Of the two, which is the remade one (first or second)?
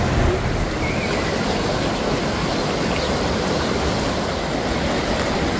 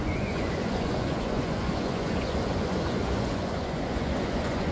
second